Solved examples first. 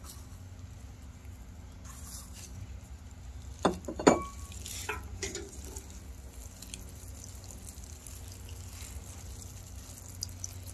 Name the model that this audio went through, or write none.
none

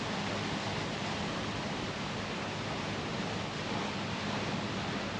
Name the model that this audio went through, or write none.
none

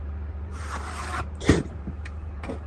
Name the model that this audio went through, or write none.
vocoder, BigVGAN v2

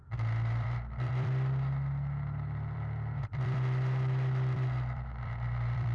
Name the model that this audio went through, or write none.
vocoder, BigVGAN v2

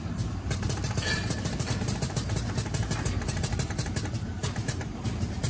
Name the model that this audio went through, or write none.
vocoder, BigVGAN v2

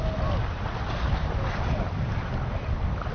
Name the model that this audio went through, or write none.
none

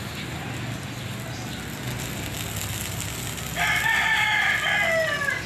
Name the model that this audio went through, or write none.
none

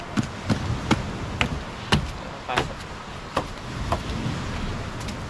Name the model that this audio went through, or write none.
none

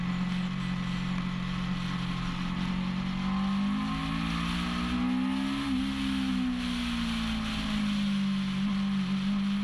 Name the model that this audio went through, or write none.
none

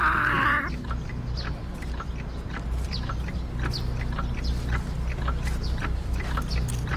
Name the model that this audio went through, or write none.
none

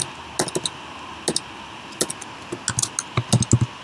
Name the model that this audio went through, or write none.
none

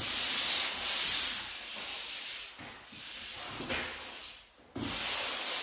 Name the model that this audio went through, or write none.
none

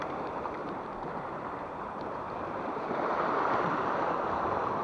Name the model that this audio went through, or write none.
vocoder, BigVGAN v2